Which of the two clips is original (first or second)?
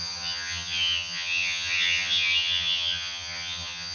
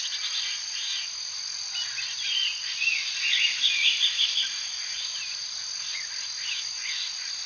second